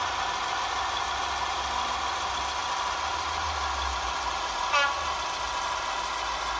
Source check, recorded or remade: recorded